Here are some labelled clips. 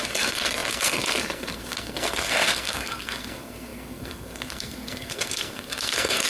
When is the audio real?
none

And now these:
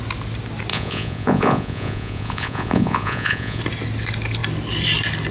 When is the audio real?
0.0-0.7; 3.6-5.3

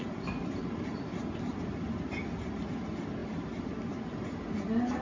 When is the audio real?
0.0-0.4; 2.2-3.2; 4.4-5.0

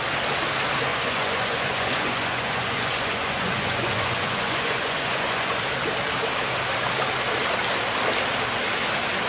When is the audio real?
0.0-0.9; 5.6-9.3

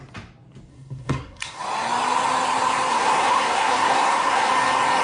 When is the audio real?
0.0-0.7; 1.6-2.9; 4.5-5.0